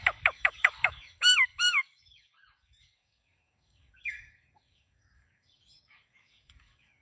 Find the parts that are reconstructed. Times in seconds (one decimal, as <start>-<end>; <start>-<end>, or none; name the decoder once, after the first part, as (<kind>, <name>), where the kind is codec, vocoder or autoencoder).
0.0-7.0 (codec, DAC)